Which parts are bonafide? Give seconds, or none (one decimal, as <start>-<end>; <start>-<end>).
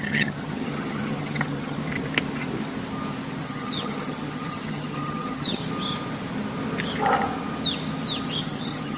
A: 1.8-3.4; 5.6-8.4